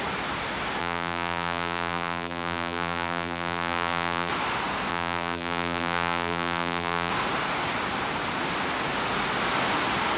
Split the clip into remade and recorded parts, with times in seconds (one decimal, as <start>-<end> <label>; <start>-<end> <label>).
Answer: 0.0-0.8 recorded; 0.8-4.3 remade; 4.3-4.9 recorded; 4.9-7.1 remade; 7.1-10.2 recorded